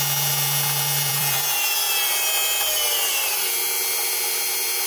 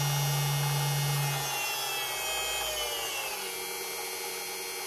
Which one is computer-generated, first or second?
first